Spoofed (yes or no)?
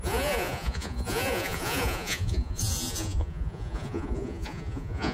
yes